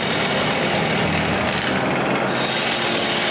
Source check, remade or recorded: recorded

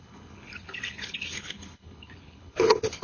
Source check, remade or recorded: remade